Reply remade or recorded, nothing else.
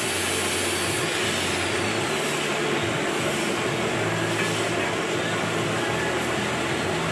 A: recorded